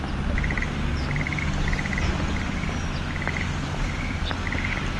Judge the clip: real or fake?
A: real